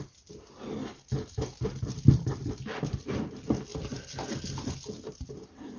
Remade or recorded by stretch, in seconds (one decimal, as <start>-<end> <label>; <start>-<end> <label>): 0.0-5.8 recorded